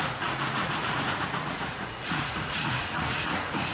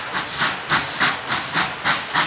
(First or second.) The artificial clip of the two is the first